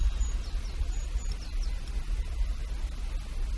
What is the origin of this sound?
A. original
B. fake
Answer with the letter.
A